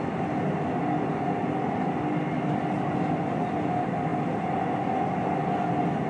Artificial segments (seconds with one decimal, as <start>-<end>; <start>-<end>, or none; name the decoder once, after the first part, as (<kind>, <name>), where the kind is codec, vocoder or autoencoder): none